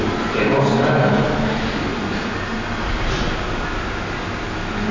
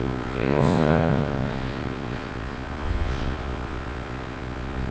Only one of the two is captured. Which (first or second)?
first